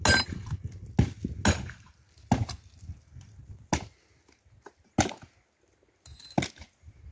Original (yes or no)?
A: yes